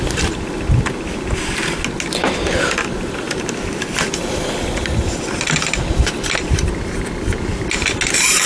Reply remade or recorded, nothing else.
recorded